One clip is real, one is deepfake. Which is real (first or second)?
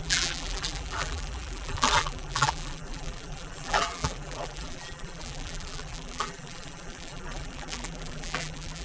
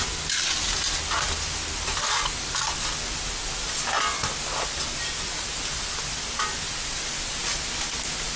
second